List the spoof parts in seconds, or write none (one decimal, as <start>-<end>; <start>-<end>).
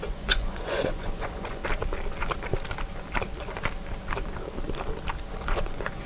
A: 0.0-1.6; 5.3-6.1